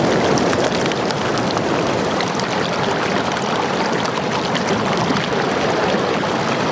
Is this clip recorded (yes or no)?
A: yes